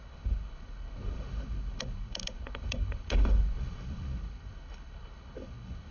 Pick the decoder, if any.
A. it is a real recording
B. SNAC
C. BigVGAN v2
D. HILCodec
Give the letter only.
D